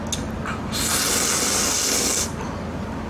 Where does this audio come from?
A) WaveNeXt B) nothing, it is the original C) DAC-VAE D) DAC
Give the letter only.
B